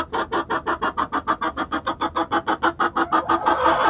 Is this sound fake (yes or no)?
no